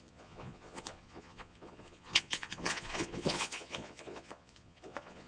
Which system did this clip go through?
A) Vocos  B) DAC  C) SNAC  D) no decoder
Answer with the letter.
A